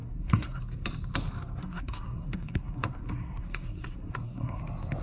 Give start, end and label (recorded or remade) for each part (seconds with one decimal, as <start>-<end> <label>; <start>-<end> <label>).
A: 0.0-0.6 remade; 0.6-1.6 recorded; 1.6-4.6 remade; 4.6-5.0 recorded